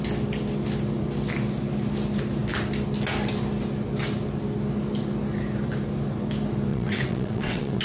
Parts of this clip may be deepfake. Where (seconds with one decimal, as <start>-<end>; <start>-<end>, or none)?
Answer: 6.7-7.8

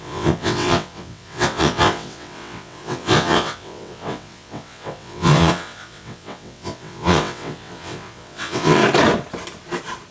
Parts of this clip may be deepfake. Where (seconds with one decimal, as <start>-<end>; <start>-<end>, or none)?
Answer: 0.0-8.8

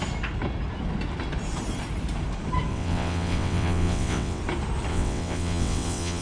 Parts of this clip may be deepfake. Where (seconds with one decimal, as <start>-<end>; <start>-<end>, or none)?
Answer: 2.7-4.4; 4.9-6.2

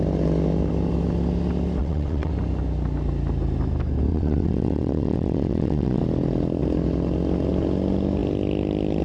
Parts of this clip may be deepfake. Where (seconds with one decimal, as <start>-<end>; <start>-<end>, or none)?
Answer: 1.8-2.3; 4.1-6.0